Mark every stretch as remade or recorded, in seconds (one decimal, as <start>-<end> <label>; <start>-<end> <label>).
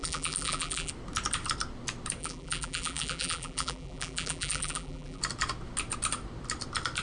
0.0-0.9 remade; 0.9-2.2 recorded; 2.2-5.2 remade; 5.2-7.0 recorded